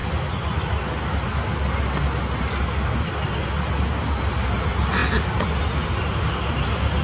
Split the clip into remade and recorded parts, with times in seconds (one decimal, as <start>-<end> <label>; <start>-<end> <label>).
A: 0.0-7.0 recorded